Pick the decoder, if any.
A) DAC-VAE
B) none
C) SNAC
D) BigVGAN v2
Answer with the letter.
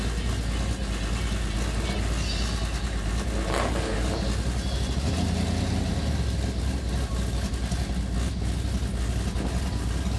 B